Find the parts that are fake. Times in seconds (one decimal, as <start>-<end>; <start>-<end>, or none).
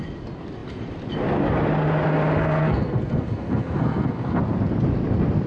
2.4-4.4